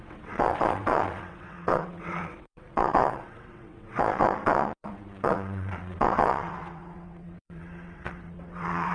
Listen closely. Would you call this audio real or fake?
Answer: fake